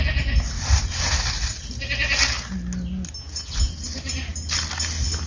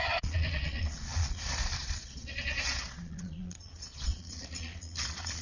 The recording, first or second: first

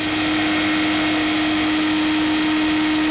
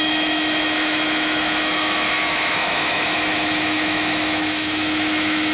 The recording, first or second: first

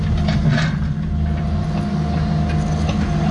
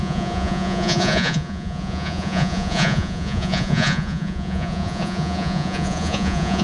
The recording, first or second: first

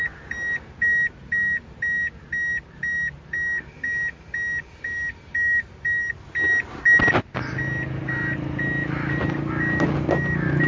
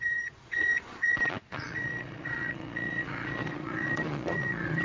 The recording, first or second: first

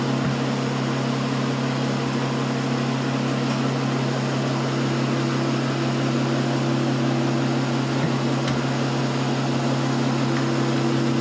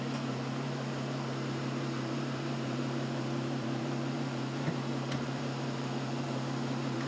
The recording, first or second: first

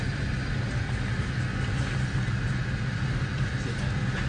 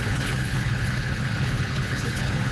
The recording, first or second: first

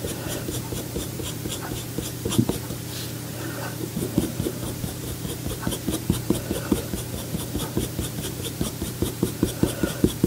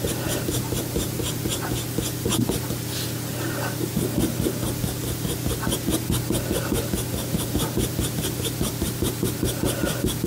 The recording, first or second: second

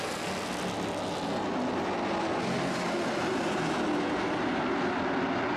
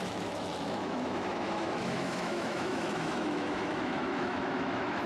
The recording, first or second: first